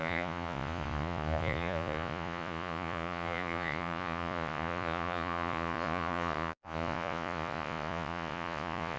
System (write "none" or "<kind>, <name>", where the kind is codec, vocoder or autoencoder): vocoder, Vocos